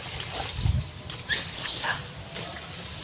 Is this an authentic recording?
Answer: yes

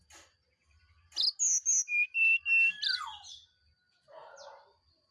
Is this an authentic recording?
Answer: yes